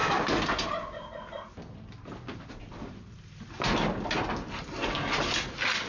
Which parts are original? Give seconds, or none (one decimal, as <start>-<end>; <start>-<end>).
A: 0.0-5.9